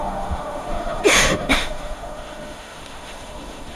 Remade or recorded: remade